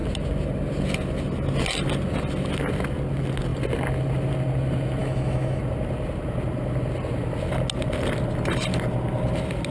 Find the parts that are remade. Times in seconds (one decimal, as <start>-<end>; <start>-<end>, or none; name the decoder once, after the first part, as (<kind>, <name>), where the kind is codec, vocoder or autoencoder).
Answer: 5.0-5.6 (autoencoder, DAC-VAE)